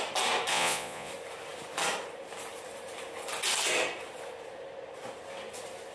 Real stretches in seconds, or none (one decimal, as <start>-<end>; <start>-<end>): 0.0-0.5; 1.1-5.9